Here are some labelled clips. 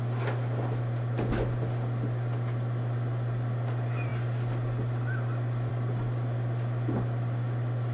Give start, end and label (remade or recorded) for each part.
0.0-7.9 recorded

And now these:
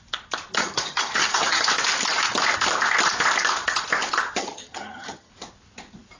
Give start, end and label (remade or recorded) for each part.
0.0-0.6 recorded; 0.6-1.7 remade; 1.7-4.4 recorded; 4.4-5.3 remade; 5.3-6.2 recorded

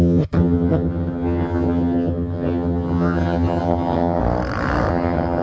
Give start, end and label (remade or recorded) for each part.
0.0-4.2 remade; 4.2-4.9 recorded; 4.9-5.4 remade

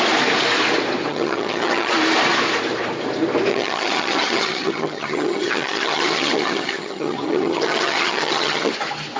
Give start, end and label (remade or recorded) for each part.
0.0-1.1 recorded; 1.1-1.9 remade; 1.9-3.5 recorded; 3.5-8.7 remade; 8.7-9.2 recorded